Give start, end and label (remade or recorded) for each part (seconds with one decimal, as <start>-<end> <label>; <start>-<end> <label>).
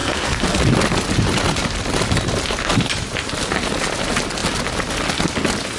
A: 0.0-0.6 remade; 0.6-5.8 recorded